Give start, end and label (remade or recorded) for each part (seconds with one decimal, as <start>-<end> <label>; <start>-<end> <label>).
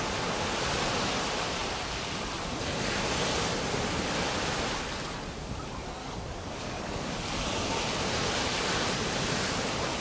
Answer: 0.0-6.0 recorded; 6.0-7.1 remade; 7.1-10.0 recorded